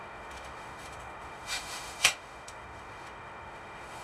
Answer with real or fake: fake